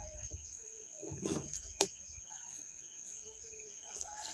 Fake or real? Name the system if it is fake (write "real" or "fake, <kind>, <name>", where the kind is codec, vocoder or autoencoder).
fake, codec, SNAC